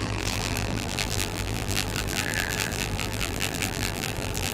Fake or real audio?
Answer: fake